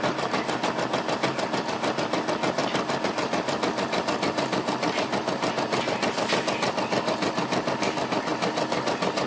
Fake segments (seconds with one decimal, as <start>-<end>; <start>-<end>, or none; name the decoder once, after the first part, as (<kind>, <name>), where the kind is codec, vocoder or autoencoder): none